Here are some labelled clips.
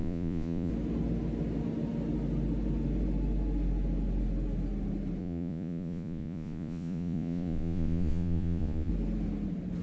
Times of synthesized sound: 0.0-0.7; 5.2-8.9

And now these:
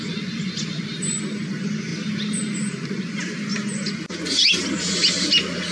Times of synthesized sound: none

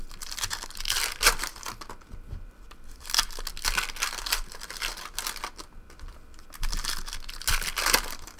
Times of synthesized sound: none

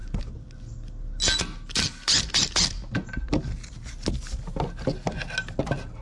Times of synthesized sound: none

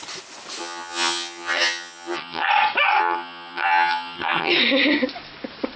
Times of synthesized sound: 0.6-2.5; 3.0-4.5

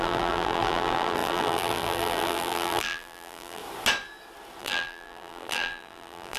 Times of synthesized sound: 0.0-3.6; 4.6-6.4